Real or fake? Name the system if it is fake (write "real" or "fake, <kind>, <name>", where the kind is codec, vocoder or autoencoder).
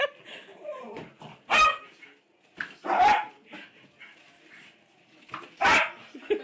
real